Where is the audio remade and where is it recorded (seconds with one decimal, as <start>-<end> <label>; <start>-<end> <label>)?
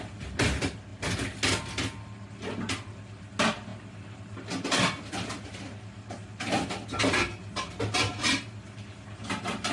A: 0.0-9.7 recorded